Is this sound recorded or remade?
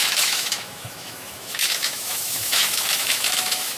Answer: remade